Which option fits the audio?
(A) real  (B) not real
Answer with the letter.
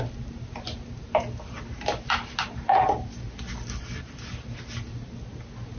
A